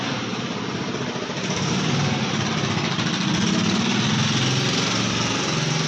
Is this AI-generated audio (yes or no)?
no